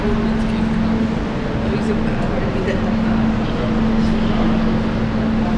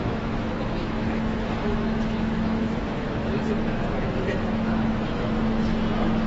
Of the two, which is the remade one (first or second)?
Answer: second